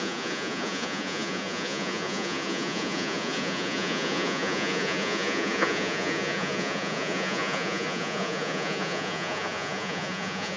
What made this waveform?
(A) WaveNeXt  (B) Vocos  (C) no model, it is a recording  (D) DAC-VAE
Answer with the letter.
B